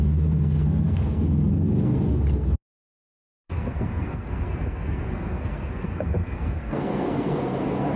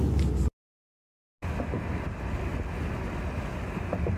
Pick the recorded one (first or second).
second